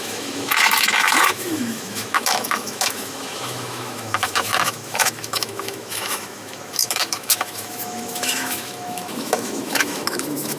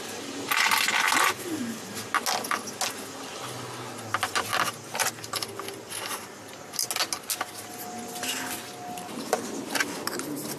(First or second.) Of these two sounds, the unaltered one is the second